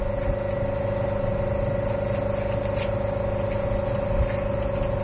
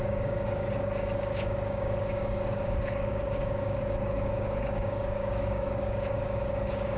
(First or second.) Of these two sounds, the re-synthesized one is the second